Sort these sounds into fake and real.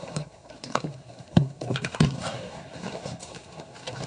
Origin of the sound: fake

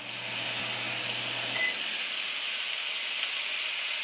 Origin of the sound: real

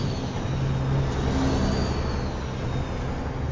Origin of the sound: real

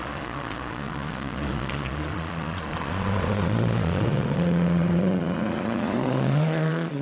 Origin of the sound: fake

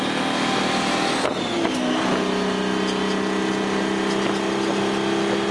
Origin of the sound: real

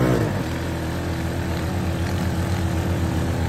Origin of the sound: real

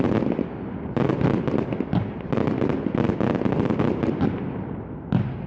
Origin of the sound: real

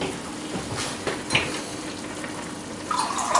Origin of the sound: real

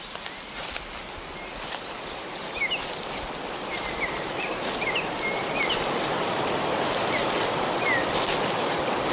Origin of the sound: real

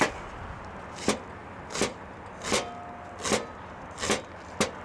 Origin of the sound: real